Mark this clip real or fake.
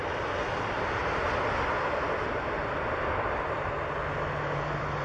real